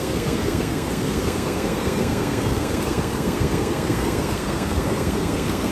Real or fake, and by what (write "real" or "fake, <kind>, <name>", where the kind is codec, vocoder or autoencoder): fake, codec, SNAC